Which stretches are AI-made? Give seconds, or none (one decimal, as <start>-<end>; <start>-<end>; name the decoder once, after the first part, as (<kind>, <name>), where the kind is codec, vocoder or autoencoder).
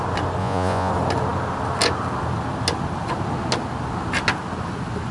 0.4-0.9 (vocoder, Vocos)